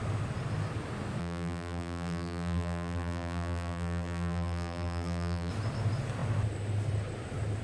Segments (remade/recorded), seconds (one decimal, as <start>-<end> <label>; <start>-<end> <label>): 0.0-1.2 recorded; 1.2-5.5 remade; 5.5-7.6 recorded